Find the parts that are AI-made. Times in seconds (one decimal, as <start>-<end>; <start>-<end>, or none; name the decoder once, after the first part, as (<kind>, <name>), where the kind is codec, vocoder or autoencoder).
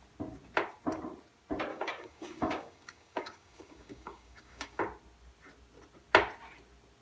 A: 1.7-4.8 (codec, DAC)